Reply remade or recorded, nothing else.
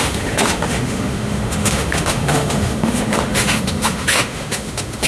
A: remade